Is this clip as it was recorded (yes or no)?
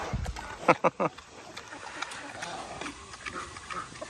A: yes